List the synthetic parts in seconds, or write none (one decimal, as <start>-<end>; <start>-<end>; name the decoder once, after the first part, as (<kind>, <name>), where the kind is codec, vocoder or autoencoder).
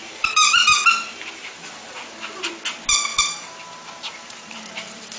0.0-2.5 (vocoder, BigVGAN v2); 3.1-5.2